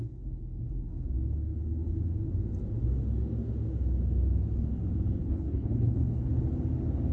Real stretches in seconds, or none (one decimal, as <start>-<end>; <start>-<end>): 0.0-5.2; 6.3-7.1